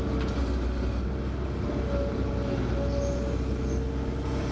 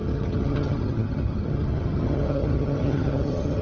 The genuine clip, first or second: first